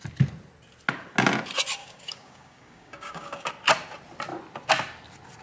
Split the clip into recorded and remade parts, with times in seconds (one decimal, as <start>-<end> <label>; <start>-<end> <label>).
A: 0.0-1.8 recorded; 1.8-3.5 remade; 3.5-5.4 recorded